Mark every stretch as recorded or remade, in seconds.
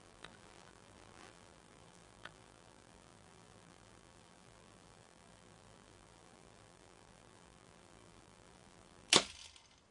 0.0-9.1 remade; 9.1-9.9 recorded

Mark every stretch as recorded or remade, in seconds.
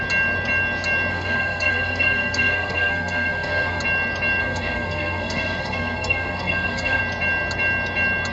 0.0-1.1 recorded; 1.1-3.8 remade; 3.8-4.4 recorded; 4.4-7.0 remade; 7.0-8.3 recorded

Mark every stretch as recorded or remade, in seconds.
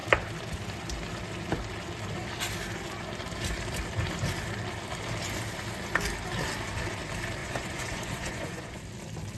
0.0-7.4 recorded; 7.4-8.8 remade; 8.8-9.4 recorded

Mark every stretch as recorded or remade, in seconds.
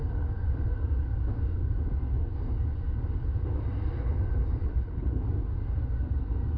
0.0-4.6 recorded; 4.6-5.3 remade; 5.3-6.6 recorded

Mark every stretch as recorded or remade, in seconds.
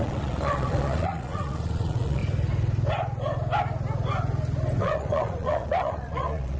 0.0-2.2 remade; 2.2-4.8 recorded; 4.8-6.6 remade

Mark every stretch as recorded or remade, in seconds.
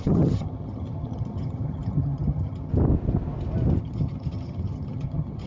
0.0-2.7 remade; 2.7-3.8 recorded; 3.8-5.5 remade